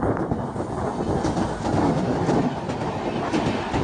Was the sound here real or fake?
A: real